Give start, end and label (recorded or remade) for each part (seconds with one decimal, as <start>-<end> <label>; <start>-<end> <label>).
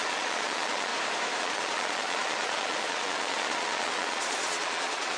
0.0-0.9 remade; 0.9-1.4 recorded; 1.4-5.2 remade